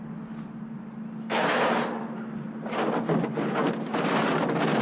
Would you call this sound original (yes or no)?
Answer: yes